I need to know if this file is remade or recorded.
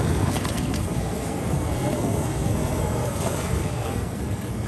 remade